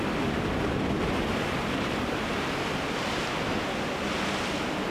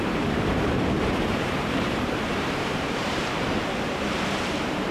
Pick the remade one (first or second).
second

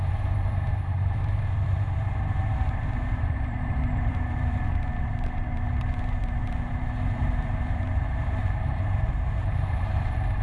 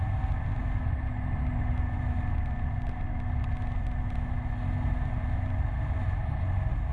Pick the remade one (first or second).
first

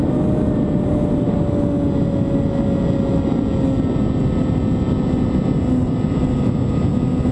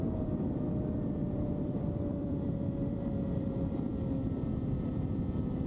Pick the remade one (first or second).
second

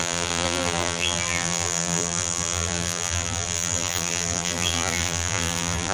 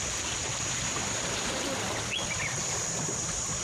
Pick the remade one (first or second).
first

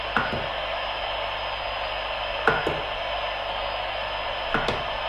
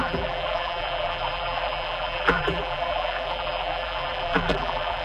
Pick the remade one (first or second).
second